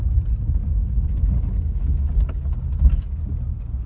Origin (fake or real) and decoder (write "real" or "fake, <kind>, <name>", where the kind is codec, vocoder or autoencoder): real